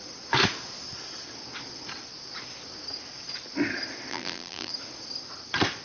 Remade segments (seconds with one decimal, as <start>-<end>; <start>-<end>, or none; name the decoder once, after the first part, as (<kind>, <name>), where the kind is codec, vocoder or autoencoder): 4.1-4.7 (vocoder, BigVGAN v2)